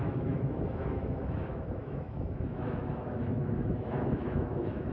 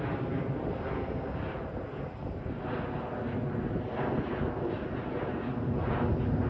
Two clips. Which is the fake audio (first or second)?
first